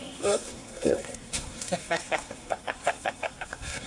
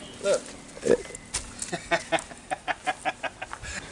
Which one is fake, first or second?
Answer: first